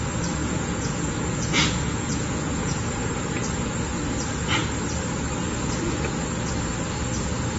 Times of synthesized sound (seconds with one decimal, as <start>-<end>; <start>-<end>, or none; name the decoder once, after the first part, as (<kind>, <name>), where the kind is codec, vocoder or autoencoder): 0.4-3.7 (vocoder, Vocos)

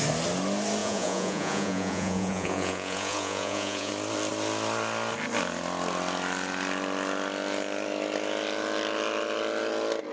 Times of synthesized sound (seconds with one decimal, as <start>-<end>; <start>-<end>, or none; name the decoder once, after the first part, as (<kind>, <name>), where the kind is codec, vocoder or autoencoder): 0.8-3.9 (vocoder, Vocos)

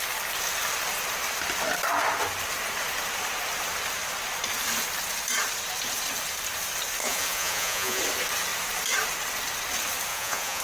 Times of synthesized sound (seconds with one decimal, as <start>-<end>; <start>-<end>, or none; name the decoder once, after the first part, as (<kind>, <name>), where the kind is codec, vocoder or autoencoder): 7.0-8.0 (vocoder, Vocos); 10.1-10.6

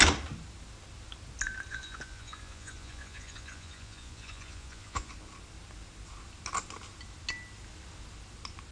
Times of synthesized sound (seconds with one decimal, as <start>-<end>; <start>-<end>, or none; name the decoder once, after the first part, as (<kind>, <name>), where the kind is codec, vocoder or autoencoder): 1.7-5.1 (vocoder, Vocos)

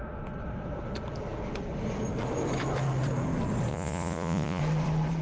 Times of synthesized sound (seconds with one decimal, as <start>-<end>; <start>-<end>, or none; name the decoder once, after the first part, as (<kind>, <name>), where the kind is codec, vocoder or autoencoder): 3.7-4.6 (vocoder, Vocos)

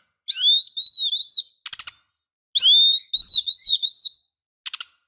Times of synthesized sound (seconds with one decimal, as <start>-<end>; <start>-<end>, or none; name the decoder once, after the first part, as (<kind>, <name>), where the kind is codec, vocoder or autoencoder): 3.2-4.3 (vocoder, Vocos)

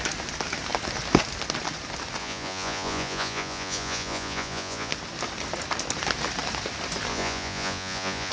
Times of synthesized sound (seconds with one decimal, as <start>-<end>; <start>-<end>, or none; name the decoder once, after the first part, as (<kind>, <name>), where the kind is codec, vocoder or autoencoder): 2.2-4.9 (vocoder, Vocos); 7.1-8.3